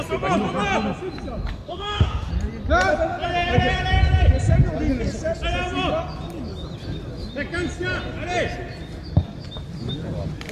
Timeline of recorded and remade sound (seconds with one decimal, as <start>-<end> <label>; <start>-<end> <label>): 0.0-1.5 recorded; 1.5-2.3 remade; 2.3-10.5 recorded